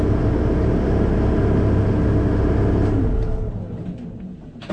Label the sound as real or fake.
real